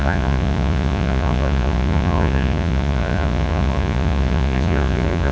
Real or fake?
fake